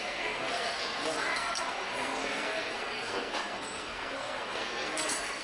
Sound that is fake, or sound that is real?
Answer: fake